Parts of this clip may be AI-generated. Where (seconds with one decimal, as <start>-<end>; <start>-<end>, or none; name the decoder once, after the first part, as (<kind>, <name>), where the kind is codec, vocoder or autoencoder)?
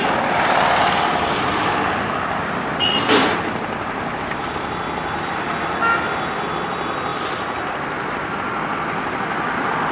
none